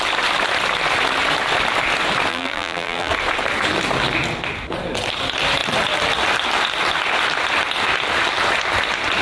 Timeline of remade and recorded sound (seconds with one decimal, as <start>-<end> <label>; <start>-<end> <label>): 0.0-2.3 recorded; 2.3-3.1 remade; 3.1-9.2 recorded